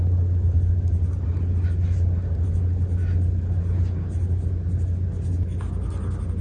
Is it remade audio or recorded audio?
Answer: recorded